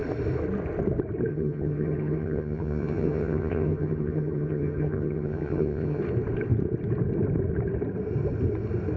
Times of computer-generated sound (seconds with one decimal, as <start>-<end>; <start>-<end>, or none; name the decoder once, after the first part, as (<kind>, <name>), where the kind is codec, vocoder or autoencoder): 1.3-6.0 (vocoder, HiFi-GAN)